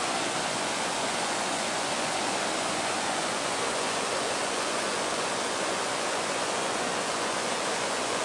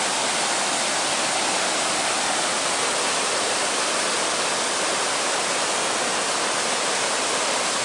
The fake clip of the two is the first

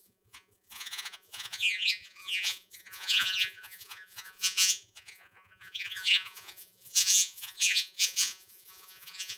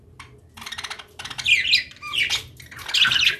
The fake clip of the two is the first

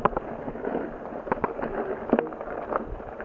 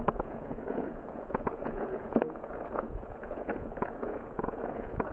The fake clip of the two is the second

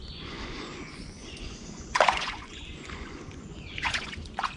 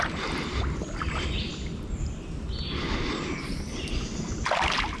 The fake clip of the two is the first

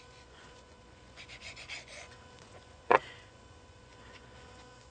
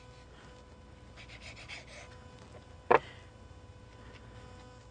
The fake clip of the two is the first